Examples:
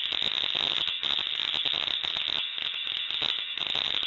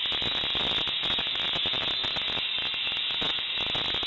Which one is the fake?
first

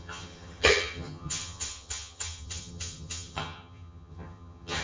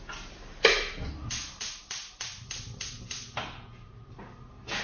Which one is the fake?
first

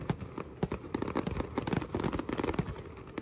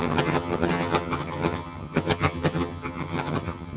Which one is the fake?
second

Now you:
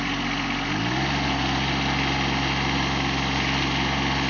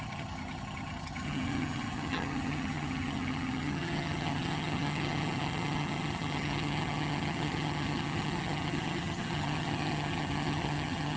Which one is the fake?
second